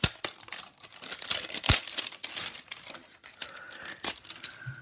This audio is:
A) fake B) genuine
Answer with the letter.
B